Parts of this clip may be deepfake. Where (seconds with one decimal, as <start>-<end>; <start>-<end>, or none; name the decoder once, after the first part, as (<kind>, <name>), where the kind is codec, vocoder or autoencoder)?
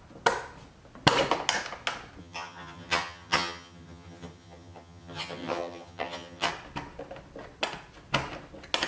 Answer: 2.2-6.5 (vocoder, HiFi-GAN)